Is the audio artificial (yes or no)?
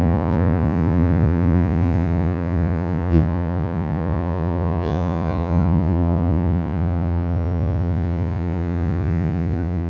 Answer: yes